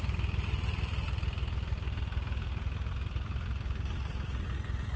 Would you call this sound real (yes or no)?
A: yes